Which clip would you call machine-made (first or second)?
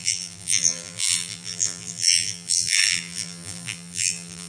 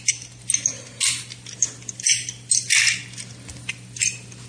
first